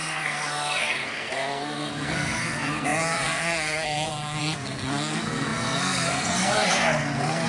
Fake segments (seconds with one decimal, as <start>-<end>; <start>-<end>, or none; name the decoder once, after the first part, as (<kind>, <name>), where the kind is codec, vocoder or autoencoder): 0.0-7.5 (codec, SNAC)